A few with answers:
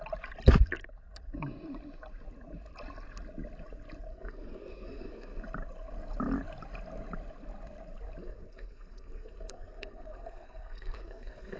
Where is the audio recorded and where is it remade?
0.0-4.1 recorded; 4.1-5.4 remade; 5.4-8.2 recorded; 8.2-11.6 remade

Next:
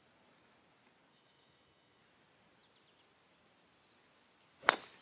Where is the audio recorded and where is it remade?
0.0-1.1 recorded; 1.1-2.0 remade; 2.0-5.0 recorded